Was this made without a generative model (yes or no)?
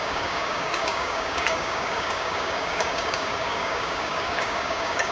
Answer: no